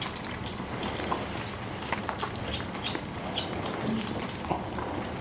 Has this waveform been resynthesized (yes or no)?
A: no